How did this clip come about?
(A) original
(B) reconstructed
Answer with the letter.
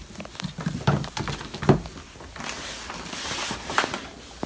A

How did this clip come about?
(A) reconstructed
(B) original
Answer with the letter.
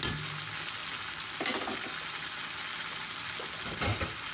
B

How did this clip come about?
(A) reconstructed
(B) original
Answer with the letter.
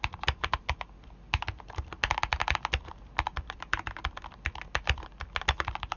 B